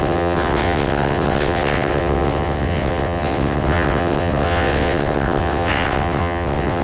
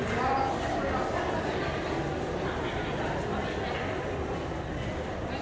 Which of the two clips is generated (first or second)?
first